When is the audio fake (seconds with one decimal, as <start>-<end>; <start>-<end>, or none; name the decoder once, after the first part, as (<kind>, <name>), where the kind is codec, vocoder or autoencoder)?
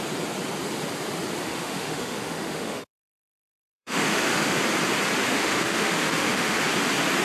1.4-4.6 (autoencoder, DAC-VAE); 5.2-6.6